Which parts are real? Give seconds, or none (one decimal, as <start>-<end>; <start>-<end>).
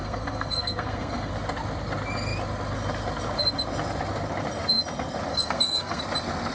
1.3-5.3; 6.0-6.5